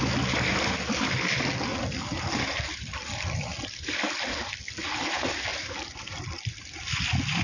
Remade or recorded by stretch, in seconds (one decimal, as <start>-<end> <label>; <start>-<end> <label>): 0.0-5.5 recorded; 5.5-6.8 remade; 6.8-7.4 recorded

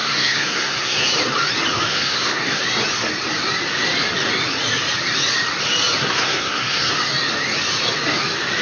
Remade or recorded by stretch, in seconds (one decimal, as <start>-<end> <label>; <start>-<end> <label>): 0.0-1.1 remade; 1.1-1.9 recorded; 1.9-2.6 remade; 2.6-6.0 recorded; 6.0-6.9 remade; 6.9-8.6 recorded